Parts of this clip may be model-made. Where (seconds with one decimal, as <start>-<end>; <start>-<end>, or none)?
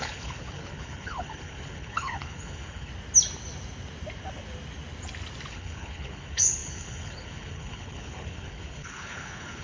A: 0.0-2.9; 5.5-9.6